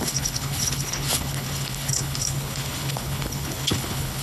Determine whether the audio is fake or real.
fake